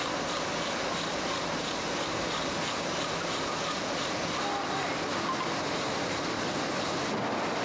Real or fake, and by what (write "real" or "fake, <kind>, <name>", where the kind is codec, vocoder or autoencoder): real